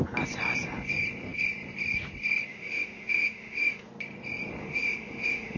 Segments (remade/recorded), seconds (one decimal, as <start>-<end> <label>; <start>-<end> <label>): 0.0-2.5 recorded; 2.5-3.9 remade; 3.9-4.6 recorded; 4.6-5.6 remade